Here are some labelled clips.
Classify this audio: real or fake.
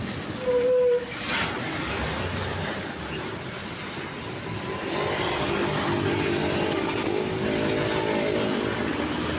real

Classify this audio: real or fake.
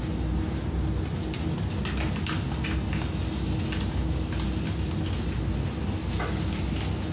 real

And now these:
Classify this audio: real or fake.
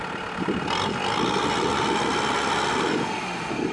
real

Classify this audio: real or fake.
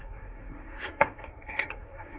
fake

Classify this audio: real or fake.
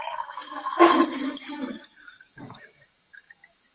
fake